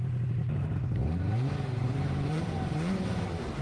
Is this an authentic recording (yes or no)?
no